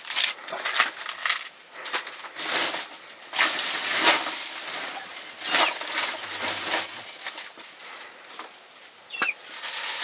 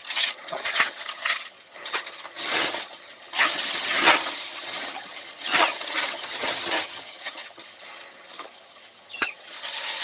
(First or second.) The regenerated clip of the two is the second